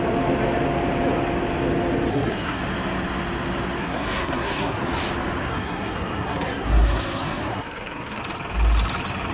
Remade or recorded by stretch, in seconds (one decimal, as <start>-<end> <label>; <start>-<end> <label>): 0.0-2.1 recorded; 2.1-2.6 remade; 2.6-3.8 recorded; 3.8-4.8 remade; 4.8-5.5 recorded; 5.5-8.2 remade; 8.2-9.3 recorded